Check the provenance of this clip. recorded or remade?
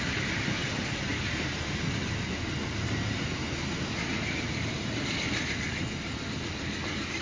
recorded